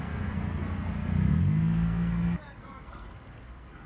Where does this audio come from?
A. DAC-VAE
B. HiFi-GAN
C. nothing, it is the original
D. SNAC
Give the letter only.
D